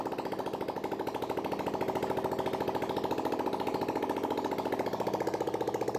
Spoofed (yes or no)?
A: no